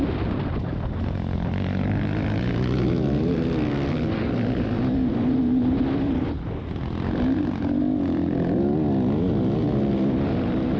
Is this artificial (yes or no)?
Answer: no